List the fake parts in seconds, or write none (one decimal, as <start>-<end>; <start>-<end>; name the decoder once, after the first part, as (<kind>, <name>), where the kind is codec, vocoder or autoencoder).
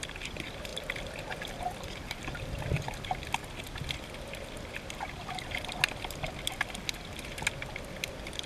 0.0-3.4 (vocoder, BigVGAN v2); 8.1-8.5